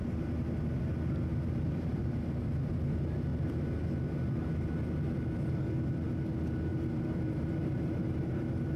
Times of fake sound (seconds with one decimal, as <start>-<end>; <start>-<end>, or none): 1.3-2.4; 6.7-8.8